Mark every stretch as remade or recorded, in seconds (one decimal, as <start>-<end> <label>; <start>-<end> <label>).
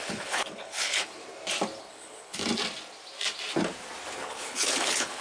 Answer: 0.0-1.2 remade; 1.2-1.8 recorded; 1.8-2.4 remade; 2.4-4.2 recorded; 4.2-5.2 remade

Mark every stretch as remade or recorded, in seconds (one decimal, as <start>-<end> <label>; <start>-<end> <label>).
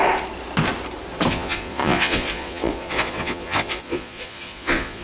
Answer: 0.0-1.3 recorded; 1.3-5.0 remade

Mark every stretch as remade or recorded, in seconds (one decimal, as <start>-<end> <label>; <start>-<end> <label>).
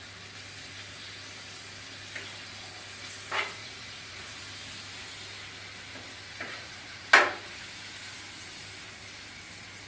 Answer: 0.0-3.6 recorded; 3.6-4.4 remade; 4.4-6.3 recorded; 6.3-7.0 remade; 7.0-9.9 recorded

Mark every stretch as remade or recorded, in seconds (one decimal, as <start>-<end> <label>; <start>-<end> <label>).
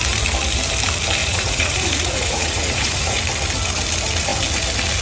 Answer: 0.0-1.2 recorded; 1.2-3.2 remade; 3.2-5.0 recorded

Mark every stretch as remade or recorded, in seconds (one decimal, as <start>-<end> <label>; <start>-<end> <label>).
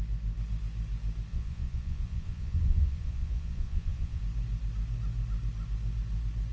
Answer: 0.0-1.3 recorded; 1.3-4.2 remade; 4.2-6.5 recorded